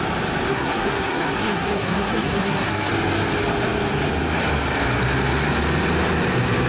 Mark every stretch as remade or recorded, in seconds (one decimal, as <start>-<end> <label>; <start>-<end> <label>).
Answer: 0.0-0.5 recorded; 0.5-2.9 remade; 2.9-6.7 recorded